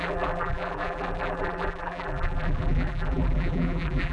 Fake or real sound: fake